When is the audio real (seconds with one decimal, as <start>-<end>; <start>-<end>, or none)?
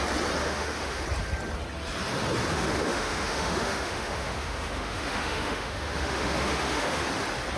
0.0-0.4; 1.0-2.5; 7.0-7.6